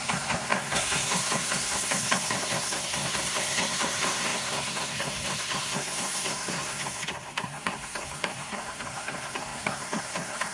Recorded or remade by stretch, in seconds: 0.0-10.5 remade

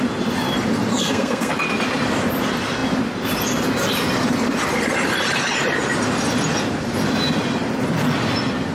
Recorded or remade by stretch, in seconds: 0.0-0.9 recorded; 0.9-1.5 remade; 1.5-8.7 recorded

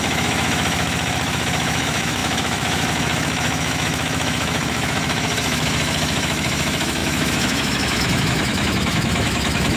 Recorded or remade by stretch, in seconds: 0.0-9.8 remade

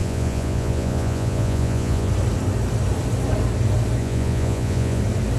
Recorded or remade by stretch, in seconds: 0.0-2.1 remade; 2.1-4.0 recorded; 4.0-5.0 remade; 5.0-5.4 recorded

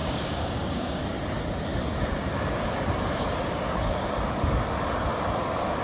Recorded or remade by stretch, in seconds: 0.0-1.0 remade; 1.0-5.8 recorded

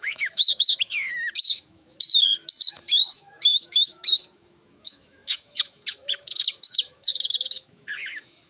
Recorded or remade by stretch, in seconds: 0.0-8.5 remade

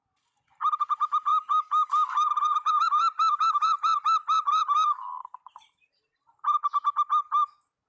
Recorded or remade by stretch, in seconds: 0.0-1.3 recorded; 1.3-1.9 remade; 1.9-2.5 recorded; 2.5-7.2 remade; 7.2-7.9 recorded